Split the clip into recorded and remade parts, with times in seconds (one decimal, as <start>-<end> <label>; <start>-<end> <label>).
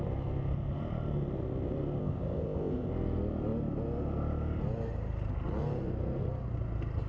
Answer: 0.0-2.0 recorded; 2.0-2.9 remade; 2.9-7.1 recorded